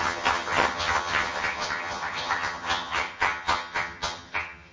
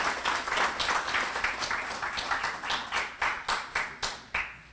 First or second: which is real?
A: second